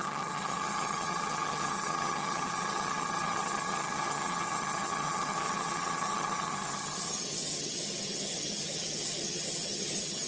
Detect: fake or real fake